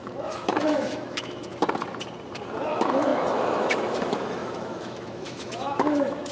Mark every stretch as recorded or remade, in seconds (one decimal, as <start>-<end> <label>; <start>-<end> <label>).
0.0-1.5 remade; 1.5-2.7 recorded; 2.7-6.3 remade